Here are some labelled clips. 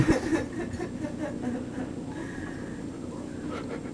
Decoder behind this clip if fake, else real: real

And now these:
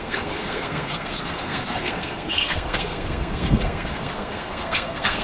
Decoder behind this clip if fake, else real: fake, codec, SNAC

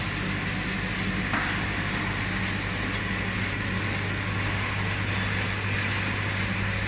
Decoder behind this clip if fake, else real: real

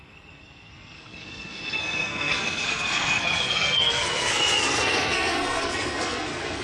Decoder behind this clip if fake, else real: fake, codec, SNAC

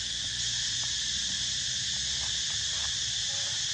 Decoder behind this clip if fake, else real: real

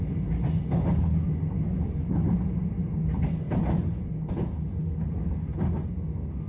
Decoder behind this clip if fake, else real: real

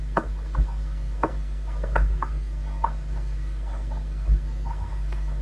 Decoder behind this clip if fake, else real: fake, codec, SNAC